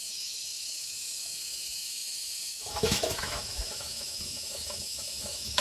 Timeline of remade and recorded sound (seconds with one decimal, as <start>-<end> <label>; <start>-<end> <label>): 0.0-5.6 remade